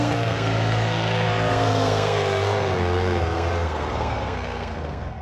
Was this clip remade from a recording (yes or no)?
yes